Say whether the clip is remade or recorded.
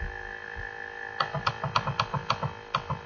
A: recorded